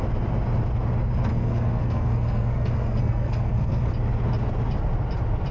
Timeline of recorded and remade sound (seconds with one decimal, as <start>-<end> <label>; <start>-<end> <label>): 0.0-1.3 recorded; 1.3-3.9 remade; 3.9-5.5 recorded